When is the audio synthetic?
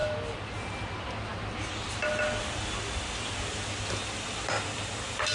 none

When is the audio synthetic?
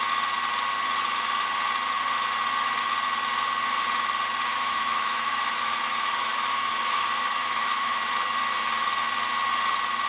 4.5-8.0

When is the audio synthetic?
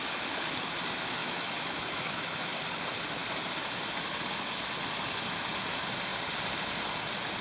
1.2-2.6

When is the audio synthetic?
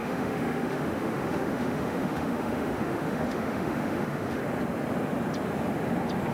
0.0-4.4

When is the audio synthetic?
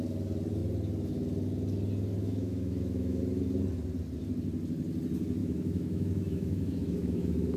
2.2-3.2; 5.4-7.6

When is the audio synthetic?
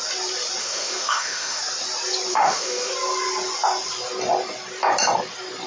0.6-1.6; 2.3-2.9